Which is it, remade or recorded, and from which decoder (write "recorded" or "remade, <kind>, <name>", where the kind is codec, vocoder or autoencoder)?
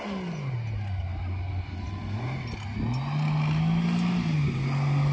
recorded